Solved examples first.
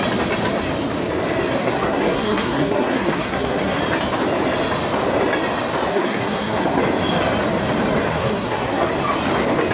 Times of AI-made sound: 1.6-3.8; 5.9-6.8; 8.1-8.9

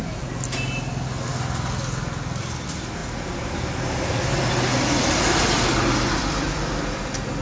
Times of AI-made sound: none